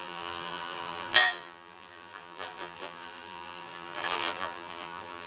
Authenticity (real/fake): fake